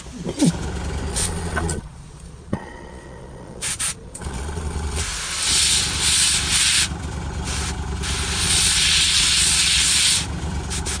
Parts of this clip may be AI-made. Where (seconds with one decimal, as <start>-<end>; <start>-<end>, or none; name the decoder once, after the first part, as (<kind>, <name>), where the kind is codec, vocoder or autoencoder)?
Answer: 1.1-5.0 (vocoder, Vocos); 8.4-9.9